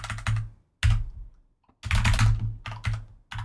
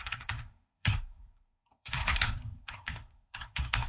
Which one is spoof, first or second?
second